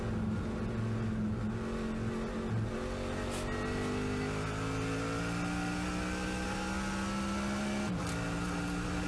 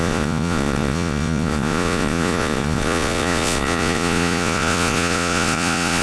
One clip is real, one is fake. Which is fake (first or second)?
second